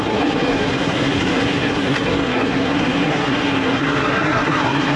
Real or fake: fake